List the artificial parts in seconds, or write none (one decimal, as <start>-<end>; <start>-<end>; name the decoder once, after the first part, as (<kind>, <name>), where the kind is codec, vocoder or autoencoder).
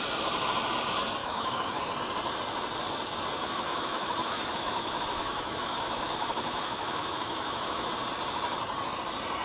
1.2-1.8 (autoencoder, DAC-VAE); 3.4-7.9